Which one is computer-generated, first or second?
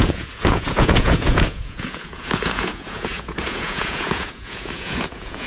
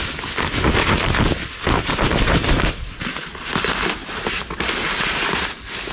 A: first